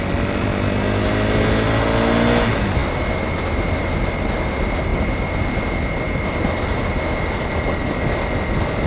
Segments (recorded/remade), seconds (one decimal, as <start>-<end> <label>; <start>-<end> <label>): 0.0-8.9 recorded